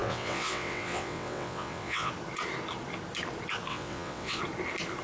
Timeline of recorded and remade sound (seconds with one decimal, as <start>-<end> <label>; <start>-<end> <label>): 0.0-2.1 remade; 2.1-3.7 recorded; 3.7-4.4 remade; 4.4-5.0 recorded